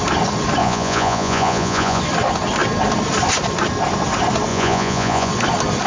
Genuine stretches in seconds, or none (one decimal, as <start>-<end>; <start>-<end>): 0.0-0.6; 2.0-4.5; 5.3-5.9